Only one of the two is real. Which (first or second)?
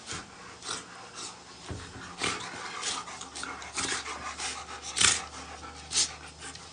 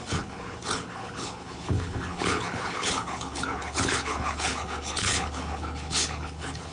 first